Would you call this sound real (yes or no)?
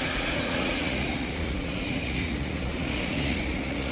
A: no